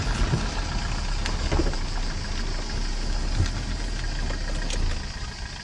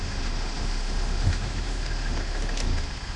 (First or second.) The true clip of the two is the first